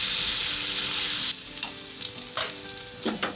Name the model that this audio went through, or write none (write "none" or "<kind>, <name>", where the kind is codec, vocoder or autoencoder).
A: none